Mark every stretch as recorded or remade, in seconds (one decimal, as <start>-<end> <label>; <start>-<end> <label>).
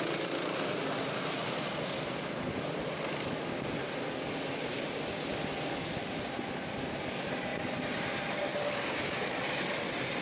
0.0-8.5 recorded; 8.5-9.2 remade; 9.2-10.2 recorded